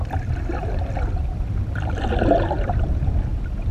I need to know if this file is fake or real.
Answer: real